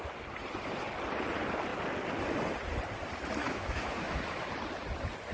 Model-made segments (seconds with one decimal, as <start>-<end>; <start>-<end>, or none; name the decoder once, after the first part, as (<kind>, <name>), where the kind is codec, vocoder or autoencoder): 3.4-4.5 (autoencoder, DAC-VAE)